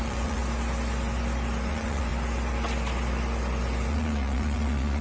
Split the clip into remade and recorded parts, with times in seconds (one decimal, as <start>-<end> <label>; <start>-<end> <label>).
0.0-0.4 remade; 0.4-1.7 recorded; 1.7-2.1 remade; 2.1-3.9 recorded; 3.9-5.0 remade